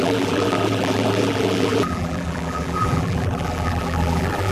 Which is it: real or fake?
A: fake